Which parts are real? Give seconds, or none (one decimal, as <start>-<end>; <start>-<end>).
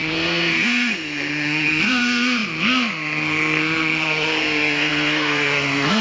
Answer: none